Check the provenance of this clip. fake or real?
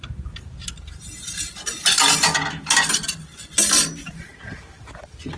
fake